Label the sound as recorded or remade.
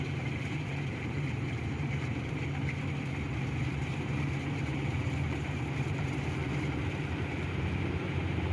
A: remade